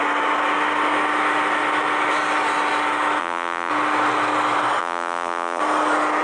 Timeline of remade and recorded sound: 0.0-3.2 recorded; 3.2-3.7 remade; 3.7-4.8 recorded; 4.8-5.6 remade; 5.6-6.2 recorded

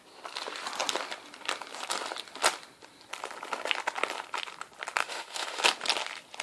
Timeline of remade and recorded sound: 0.0-5.0 recorded; 5.0-5.6 remade; 5.6-6.4 recorded

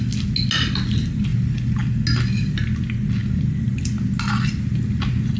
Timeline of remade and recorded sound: 0.0-5.4 recorded

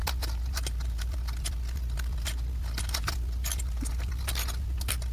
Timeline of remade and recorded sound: 0.0-5.1 recorded

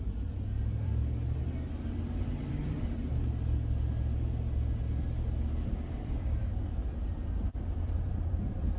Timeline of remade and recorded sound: 0.0-3.1 remade; 3.1-5.7 recorded; 5.7-6.5 remade; 6.5-7.6 recorded; 7.6-8.8 remade

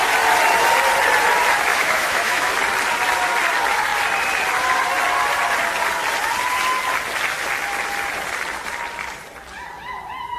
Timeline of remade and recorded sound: 0.0-1.7 recorded; 1.7-2.5 remade; 2.5-10.4 recorded

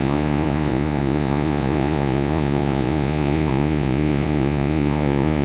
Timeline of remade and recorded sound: 0.0-5.4 remade

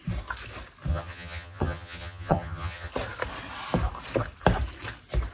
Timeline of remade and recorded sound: 0.0-0.9 recorded; 0.9-2.9 remade; 2.9-5.3 recorded